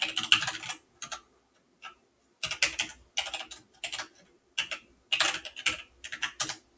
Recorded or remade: recorded